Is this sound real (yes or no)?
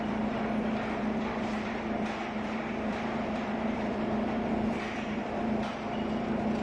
no